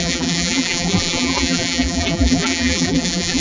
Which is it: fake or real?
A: fake